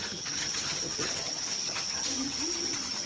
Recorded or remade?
remade